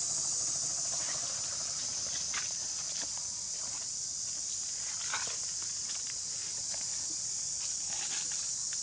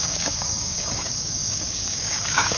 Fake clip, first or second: second